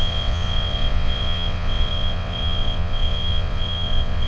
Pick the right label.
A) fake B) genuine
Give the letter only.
A